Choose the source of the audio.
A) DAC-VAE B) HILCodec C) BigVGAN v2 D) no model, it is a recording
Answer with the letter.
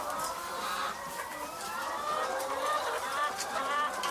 D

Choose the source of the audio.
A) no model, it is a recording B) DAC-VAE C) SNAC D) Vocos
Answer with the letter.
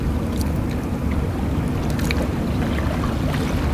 A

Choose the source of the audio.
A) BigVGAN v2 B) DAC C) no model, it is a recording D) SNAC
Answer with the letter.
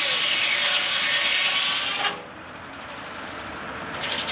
C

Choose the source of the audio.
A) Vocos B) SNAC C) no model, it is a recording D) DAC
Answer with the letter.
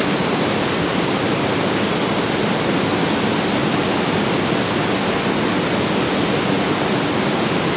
C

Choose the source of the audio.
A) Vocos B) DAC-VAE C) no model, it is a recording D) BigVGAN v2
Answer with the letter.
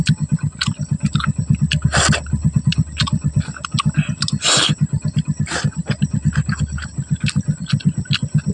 C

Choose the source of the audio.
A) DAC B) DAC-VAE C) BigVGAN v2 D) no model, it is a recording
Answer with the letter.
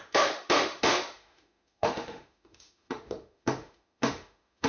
B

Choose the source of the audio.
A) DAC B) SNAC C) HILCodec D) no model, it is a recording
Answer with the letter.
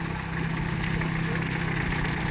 D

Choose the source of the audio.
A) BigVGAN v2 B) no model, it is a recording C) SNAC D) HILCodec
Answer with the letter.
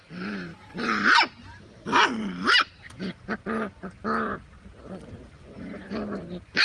A